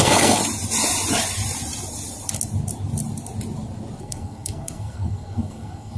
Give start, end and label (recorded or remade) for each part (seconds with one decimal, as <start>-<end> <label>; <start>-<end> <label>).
0.0-0.4 remade; 0.4-4.0 recorded; 4.0-6.0 remade